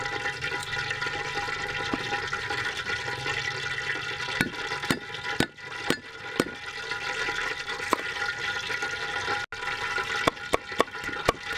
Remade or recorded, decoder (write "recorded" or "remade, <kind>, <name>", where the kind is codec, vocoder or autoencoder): recorded